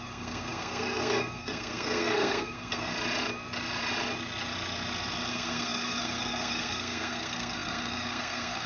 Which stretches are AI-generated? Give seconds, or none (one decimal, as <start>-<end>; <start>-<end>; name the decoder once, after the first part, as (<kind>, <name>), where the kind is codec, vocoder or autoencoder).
0.0-2.9 (codec, SNAC); 5.3-8.7